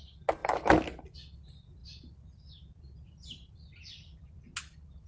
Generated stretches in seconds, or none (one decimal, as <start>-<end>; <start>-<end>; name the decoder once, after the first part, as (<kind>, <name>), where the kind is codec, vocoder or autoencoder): none